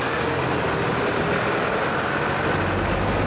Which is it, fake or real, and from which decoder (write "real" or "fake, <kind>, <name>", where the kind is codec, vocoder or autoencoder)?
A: real